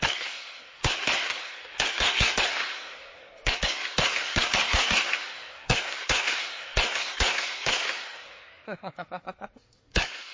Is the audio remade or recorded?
remade